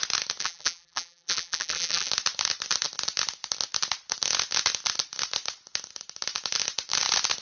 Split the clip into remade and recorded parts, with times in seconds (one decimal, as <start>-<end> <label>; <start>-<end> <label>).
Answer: 0.0-0.4 recorded; 0.4-2.1 remade; 2.1-7.4 recorded